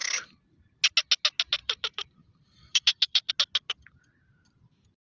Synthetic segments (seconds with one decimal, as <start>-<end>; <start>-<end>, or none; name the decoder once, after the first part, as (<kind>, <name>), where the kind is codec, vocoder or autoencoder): 1.6-3.3 (vocoder, BigVGAN v2)